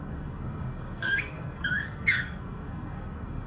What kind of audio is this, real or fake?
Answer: fake